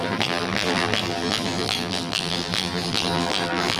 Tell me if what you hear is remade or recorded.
remade